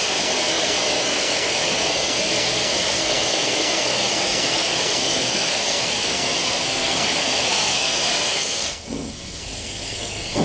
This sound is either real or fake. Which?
fake